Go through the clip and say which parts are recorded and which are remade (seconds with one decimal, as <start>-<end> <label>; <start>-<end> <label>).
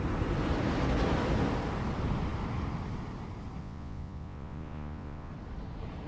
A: 0.0-3.6 recorded; 3.6-5.3 remade; 5.3-6.1 recorded